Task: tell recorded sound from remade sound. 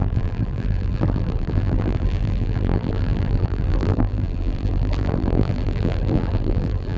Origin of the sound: remade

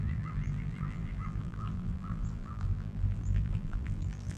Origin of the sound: remade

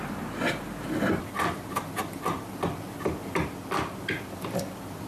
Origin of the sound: recorded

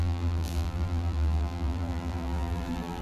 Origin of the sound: remade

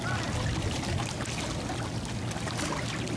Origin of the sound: recorded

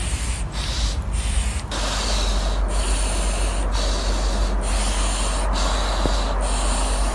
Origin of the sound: recorded